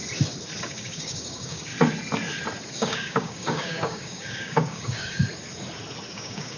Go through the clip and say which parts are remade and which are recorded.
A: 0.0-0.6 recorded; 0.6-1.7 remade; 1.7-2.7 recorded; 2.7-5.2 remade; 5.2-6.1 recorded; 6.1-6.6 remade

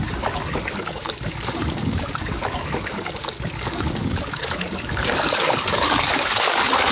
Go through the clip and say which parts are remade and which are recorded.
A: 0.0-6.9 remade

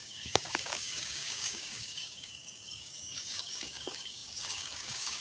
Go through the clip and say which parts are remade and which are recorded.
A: 0.0-5.2 remade

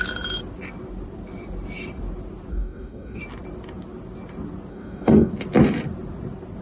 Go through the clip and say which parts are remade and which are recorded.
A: 0.0-2.5 recorded; 2.5-3.2 remade; 3.2-4.7 recorded; 4.7-5.3 remade; 5.3-6.6 recorded

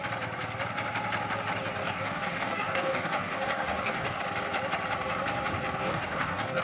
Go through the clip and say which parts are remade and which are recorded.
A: 0.0-1.8 recorded; 1.8-4.2 remade; 4.2-5.8 recorded; 5.8-6.6 remade

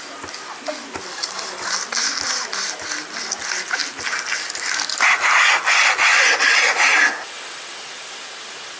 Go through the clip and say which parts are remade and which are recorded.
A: 0.0-1.1 recorded; 1.1-1.7 remade; 1.7-8.8 recorded

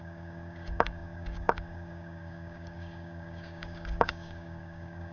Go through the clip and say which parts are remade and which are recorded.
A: 0.0-5.1 remade